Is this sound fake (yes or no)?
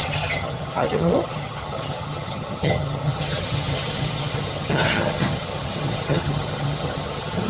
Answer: yes